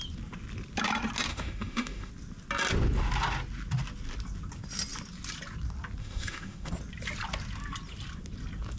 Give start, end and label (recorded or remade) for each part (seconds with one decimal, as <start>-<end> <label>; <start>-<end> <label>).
0.0-1.3 recorded; 1.3-2.1 remade; 2.1-6.0 recorded; 6.0-6.7 remade; 6.7-8.8 recorded